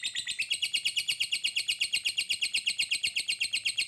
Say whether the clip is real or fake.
real